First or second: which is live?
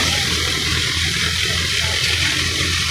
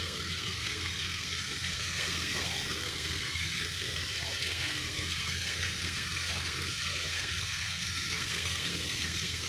first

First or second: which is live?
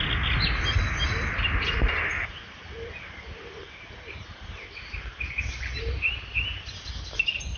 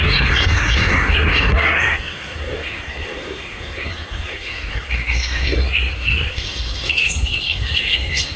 first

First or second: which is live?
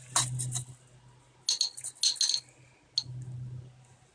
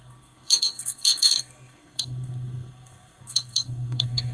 first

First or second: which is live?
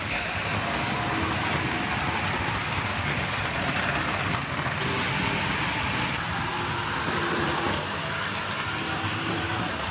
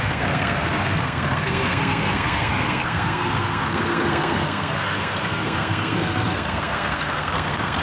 first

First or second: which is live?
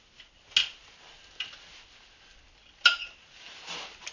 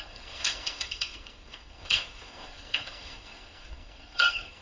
first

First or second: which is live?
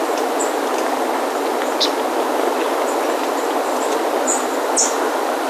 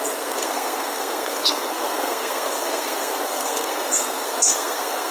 first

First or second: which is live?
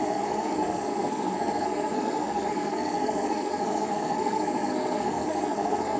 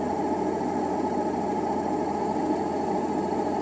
second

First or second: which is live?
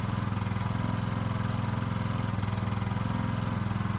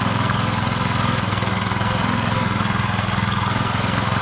first